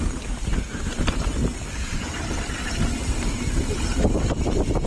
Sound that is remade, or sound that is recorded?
recorded